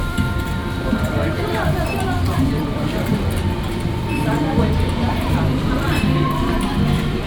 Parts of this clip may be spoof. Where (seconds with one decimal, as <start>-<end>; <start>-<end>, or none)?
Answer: 0.0-7.3

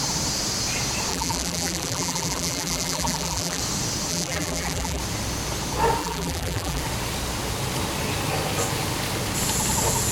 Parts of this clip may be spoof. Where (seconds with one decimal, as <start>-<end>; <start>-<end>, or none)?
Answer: 1.1-3.6; 4.1-5.0; 6.0-6.8